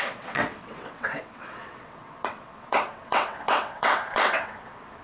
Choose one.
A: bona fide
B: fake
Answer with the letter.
B